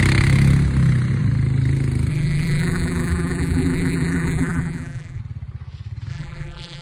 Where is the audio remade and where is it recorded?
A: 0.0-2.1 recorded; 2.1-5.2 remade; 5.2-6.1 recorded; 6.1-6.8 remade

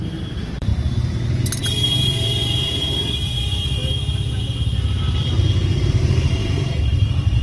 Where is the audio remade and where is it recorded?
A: 0.0-0.7 remade; 0.7-1.6 recorded; 1.6-3.8 remade; 3.8-5.9 recorded; 5.9-7.4 remade